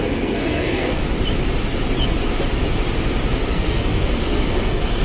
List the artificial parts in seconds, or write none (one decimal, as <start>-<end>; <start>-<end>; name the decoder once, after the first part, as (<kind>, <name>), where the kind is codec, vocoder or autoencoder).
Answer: 0.0-1.0 (codec, SNAC); 3.5-5.0